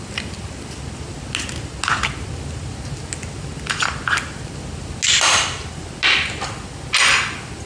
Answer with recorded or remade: recorded